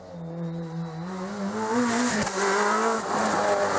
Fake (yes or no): no